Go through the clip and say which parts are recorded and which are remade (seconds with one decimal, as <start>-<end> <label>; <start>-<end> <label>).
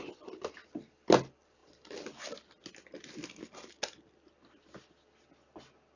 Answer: 0.0-6.0 recorded